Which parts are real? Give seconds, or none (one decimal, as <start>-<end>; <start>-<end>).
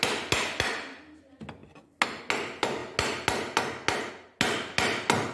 0.0-5.3